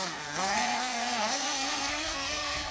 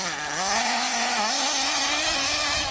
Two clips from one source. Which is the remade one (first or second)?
first